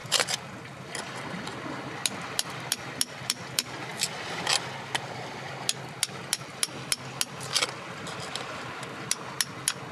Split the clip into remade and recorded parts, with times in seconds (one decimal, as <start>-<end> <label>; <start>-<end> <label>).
0.0-9.9 recorded

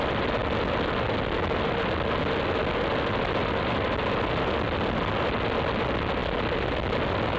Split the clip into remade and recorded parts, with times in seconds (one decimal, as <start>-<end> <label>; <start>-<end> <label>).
0.0-7.4 recorded